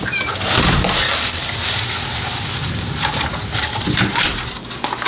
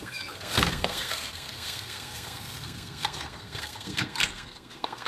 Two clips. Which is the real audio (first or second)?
first